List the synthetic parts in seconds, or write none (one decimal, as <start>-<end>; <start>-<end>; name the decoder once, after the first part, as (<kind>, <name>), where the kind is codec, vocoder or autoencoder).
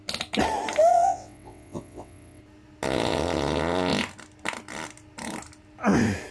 0.9-2.4 (vocoder, WaveNeXt)